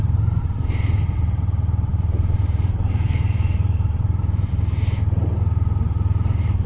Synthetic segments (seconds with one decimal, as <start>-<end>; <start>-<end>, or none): 1.9-4.6